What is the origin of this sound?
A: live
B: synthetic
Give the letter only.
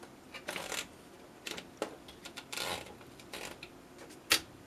A